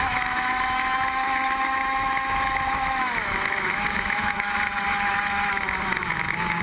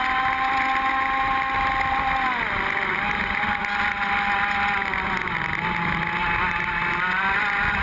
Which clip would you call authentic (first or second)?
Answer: second